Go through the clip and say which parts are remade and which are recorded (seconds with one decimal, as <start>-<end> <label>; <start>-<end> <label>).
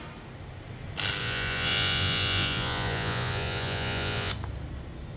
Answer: 0.0-1.2 recorded; 1.2-4.3 remade; 4.3-5.2 recorded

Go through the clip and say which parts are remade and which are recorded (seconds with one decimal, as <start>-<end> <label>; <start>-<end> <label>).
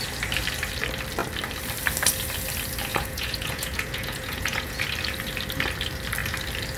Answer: 0.0-2.9 recorded; 2.9-4.8 remade; 4.8-6.8 recorded